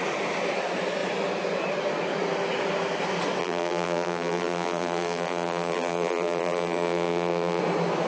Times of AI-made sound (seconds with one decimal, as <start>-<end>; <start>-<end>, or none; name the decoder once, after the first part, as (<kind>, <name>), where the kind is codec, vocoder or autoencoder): 3.4-7.6 (vocoder, BigVGAN v2)